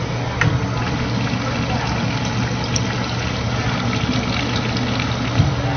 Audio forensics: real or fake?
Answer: real